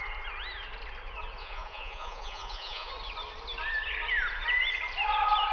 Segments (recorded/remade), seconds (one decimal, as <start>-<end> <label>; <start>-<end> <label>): 0.0-1.4 recorded; 1.4-2.9 remade; 2.9-5.5 recorded